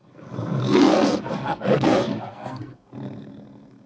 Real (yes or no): no